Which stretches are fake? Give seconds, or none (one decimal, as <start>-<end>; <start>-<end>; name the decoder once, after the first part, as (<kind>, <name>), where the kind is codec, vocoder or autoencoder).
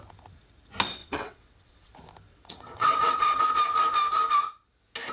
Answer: 1.0-1.9 (vocoder, WaveNeXt); 2.3-3.4